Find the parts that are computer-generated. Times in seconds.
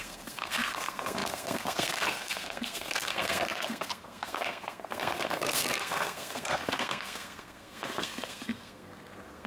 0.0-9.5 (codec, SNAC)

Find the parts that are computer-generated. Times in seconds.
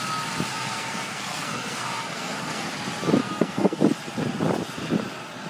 0.5-2.7 (codec, SNAC); 3.2-3.8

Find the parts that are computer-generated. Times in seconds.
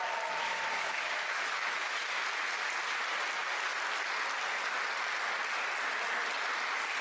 0.4-2.0 (autoencoder, DAC-VAE)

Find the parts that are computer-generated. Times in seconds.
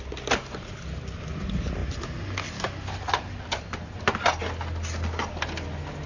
none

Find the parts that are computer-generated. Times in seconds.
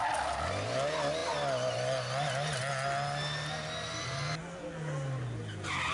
none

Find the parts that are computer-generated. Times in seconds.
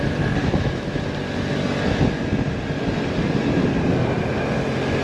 0.4-1.0 (autoencoder, DAC-VAE)